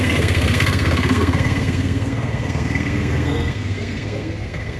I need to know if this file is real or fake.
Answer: fake